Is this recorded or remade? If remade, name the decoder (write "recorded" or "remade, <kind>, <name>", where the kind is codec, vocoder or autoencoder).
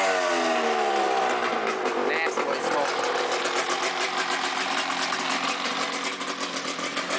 recorded